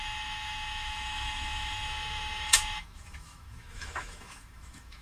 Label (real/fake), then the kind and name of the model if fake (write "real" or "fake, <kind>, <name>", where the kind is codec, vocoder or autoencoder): fake, autoencoder, DAC-VAE